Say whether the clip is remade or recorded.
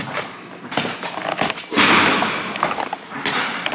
remade